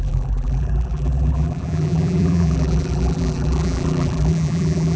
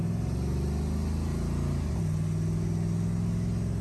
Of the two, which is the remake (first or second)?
first